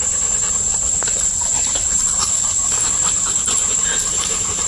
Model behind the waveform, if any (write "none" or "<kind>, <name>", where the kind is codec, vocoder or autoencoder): vocoder, BigVGAN v2